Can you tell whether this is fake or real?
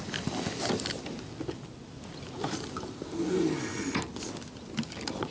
real